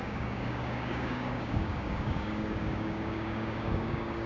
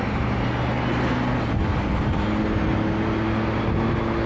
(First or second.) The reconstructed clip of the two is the first